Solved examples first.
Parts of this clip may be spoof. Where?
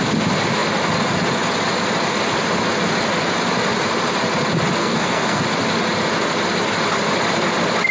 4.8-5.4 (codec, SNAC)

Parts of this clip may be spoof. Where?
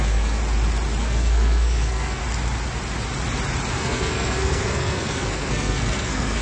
0.0-0.4 (codec, SNAC); 1.0-2.2; 3.7-6.4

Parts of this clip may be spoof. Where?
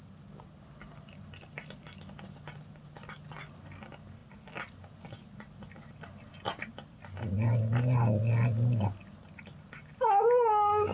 none